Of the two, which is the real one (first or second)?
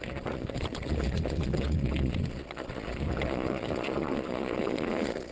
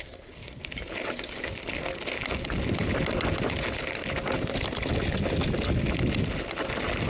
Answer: second